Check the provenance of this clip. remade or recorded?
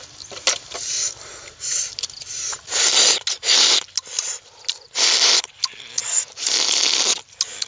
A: recorded